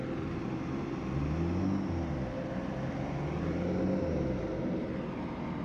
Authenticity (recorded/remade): recorded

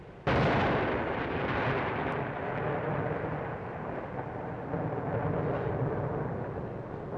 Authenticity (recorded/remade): recorded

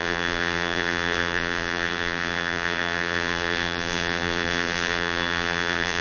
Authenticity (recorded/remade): remade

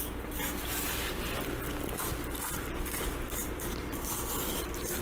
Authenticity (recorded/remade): recorded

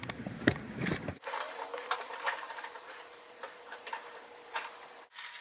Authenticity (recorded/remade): remade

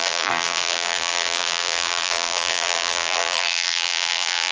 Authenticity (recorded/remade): remade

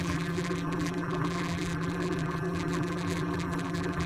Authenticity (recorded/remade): remade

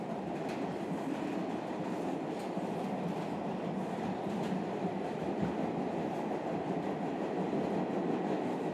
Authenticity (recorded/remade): recorded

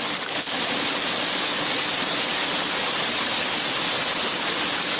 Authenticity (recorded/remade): recorded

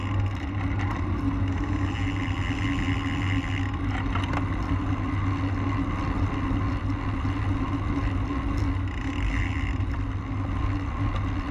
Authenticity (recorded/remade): recorded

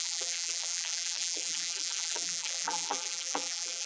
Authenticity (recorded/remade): remade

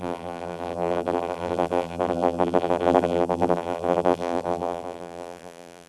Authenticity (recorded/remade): remade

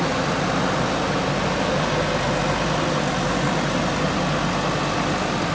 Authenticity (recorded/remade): recorded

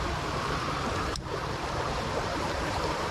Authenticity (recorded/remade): remade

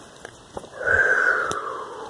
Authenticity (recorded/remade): recorded